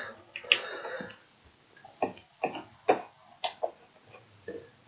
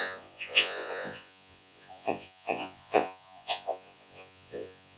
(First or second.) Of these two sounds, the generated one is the second